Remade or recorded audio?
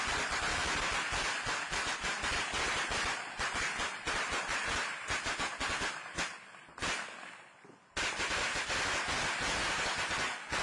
recorded